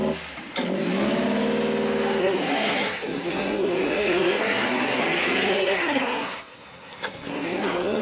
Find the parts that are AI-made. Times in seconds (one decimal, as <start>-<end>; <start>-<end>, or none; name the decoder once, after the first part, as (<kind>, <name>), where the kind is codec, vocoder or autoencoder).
2.2-5.0 (codec, SNAC); 5.5-8.0